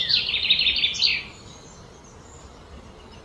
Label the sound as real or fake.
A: real